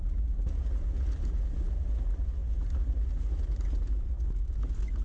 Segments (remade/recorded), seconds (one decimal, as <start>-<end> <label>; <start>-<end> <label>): 0.0-5.0 recorded